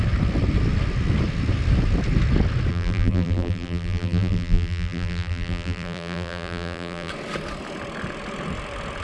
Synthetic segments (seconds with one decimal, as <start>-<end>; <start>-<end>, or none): 2.7-7.1